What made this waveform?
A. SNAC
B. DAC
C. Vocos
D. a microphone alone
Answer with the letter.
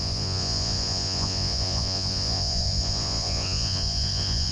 C